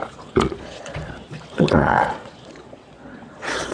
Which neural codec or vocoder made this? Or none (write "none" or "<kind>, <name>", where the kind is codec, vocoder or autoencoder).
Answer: vocoder, Vocos